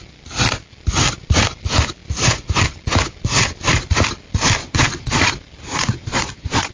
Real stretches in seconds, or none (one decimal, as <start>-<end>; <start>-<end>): 0.0-4.6; 5.3-5.7